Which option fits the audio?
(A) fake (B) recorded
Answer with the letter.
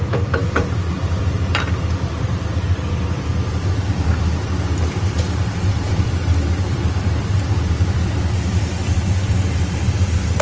A